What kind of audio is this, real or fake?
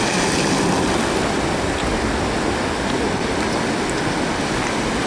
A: real